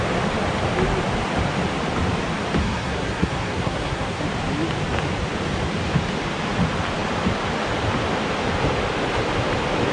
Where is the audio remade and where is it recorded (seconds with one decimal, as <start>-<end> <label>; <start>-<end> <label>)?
0.0-2.6 recorded; 2.6-4.2 remade; 4.2-9.9 recorded